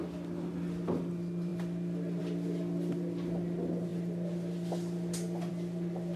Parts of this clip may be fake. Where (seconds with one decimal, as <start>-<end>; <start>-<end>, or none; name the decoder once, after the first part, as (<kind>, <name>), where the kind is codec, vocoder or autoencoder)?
none